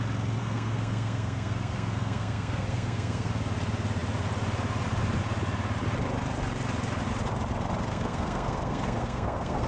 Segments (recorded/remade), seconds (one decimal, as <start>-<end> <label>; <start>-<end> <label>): 0.0-0.4 recorded; 0.4-3.3 remade; 3.3-7.9 recorded; 7.9-9.7 remade